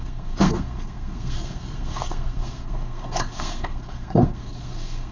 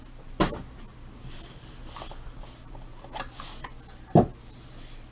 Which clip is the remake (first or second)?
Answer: first